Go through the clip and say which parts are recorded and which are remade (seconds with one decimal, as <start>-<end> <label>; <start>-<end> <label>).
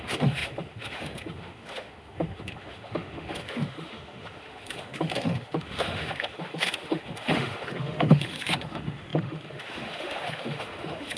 0.0-11.2 remade